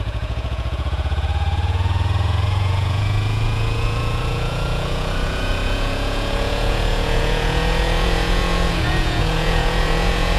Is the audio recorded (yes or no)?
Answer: no